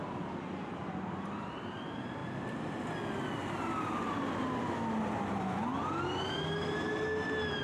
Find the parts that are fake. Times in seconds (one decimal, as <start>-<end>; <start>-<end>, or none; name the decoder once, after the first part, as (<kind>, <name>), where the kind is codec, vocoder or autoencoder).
none